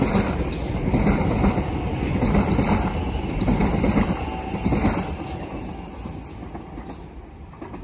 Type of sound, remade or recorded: recorded